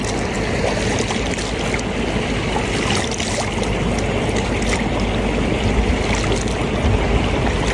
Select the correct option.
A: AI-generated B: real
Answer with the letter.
B